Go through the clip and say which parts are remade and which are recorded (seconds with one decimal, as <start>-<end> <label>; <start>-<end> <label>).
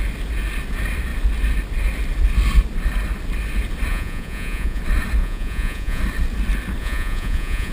0.0-3.9 recorded; 3.9-4.8 remade; 4.8-5.2 recorded; 5.2-6.0 remade; 6.0-6.8 recorded; 6.8-7.7 remade